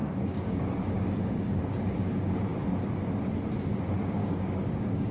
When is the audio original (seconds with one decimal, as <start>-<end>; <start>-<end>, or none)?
1.6-4.2